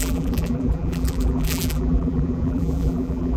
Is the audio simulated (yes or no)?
yes